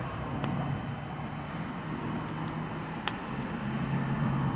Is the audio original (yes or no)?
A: yes